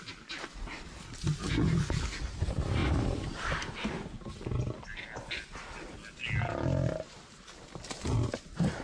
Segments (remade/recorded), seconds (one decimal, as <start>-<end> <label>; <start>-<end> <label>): 0.0-8.8 recorded